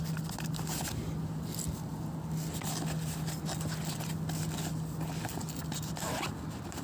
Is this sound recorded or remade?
recorded